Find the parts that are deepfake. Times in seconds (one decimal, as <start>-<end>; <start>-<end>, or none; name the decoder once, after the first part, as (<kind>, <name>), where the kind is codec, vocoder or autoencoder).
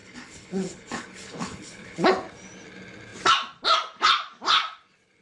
0.0-2.1 (codec, HILCodec)